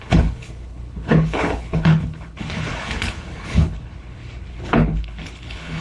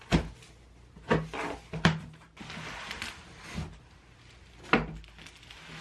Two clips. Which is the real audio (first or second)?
second